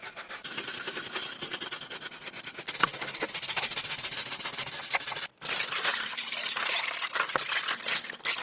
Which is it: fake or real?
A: real